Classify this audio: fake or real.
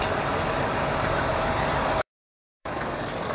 fake